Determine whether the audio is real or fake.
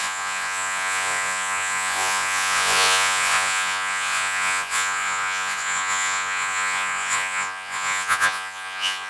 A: fake